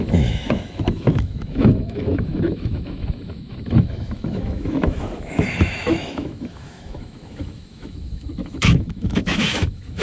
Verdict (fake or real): fake